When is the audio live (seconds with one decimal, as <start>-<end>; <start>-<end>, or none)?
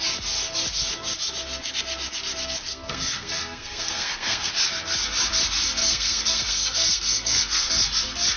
0.0-2.7; 4.5-5.8; 7.7-8.4